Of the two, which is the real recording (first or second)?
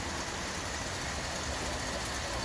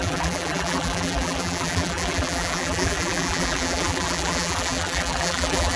first